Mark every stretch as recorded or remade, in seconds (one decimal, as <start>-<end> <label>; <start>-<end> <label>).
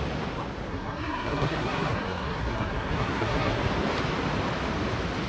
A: 0.0-0.7 recorded; 0.7-3.6 remade; 3.6-5.3 recorded